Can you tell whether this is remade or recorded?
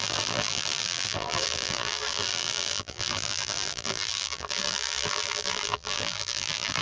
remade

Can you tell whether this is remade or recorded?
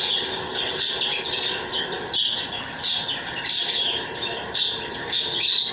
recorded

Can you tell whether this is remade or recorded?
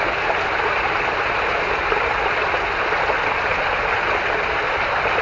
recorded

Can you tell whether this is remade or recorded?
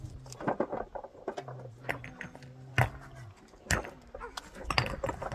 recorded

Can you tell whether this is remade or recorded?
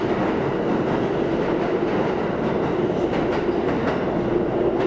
recorded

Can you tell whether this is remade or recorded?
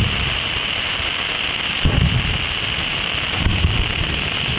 recorded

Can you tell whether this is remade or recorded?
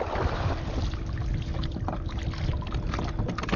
recorded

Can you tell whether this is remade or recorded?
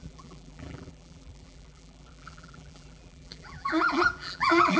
remade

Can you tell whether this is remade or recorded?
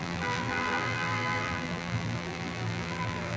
remade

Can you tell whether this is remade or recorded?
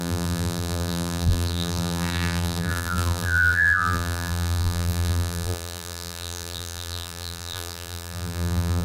remade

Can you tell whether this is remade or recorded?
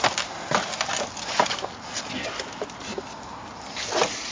recorded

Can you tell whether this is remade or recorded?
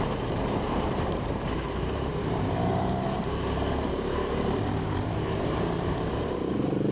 remade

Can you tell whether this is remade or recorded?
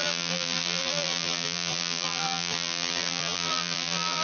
remade